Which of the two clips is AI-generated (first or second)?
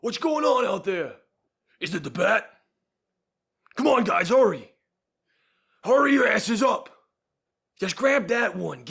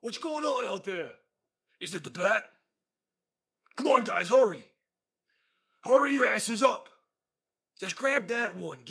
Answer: second